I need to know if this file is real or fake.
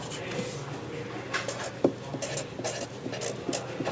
real